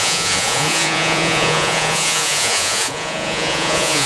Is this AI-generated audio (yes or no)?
yes